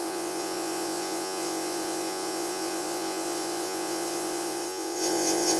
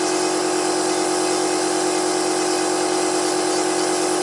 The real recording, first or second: second